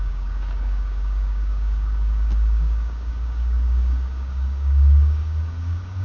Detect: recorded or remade remade